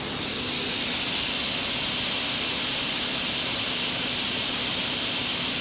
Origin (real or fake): real